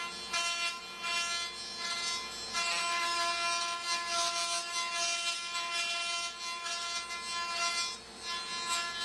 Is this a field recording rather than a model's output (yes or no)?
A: yes